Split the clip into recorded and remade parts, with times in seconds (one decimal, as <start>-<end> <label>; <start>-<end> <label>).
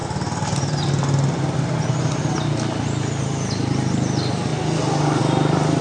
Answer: 0.0-5.8 recorded